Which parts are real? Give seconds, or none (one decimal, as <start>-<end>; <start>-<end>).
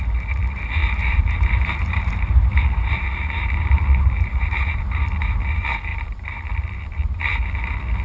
0.0-0.8; 4.8-5.9; 7.2-8.0